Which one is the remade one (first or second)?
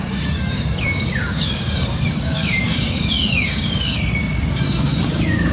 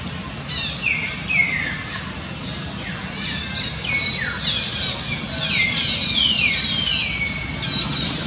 first